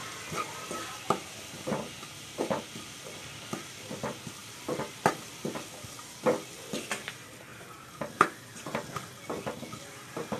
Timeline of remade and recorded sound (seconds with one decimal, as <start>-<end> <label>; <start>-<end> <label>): 0.0-4.4 recorded; 4.4-5.3 remade; 5.3-7.5 recorded; 7.5-8.9 remade; 8.9-10.4 recorded